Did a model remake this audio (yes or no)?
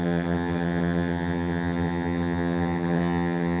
yes